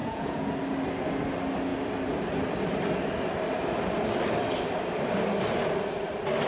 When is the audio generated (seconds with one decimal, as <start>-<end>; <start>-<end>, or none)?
0.0-0.5